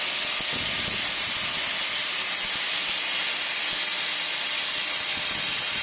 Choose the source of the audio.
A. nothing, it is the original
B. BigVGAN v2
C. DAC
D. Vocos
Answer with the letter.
A